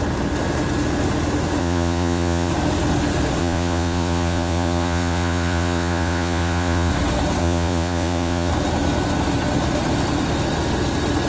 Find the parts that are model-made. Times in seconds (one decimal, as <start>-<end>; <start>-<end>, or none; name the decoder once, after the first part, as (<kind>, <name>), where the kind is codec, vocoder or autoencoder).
1.6-2.5 (vocoder, Vocos); 3.4-6.9; 7.4-8.5